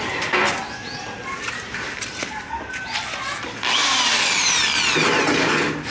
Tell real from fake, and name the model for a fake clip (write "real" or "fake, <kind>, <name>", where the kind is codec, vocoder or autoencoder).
real